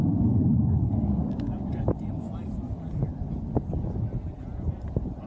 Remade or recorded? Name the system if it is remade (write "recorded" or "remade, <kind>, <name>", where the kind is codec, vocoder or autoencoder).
recorded